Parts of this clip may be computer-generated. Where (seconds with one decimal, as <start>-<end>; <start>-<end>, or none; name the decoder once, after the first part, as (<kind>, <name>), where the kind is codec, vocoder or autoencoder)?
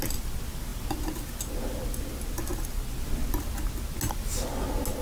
none